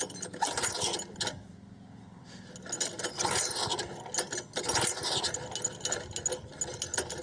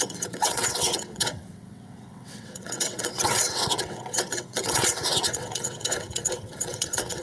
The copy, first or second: second